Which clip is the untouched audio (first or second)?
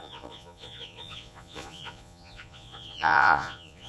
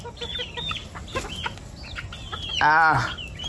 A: second